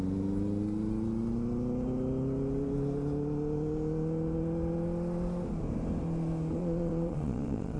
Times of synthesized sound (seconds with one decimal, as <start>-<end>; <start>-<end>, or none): 6.6-7.8